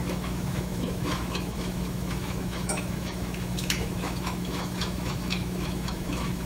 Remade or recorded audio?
remade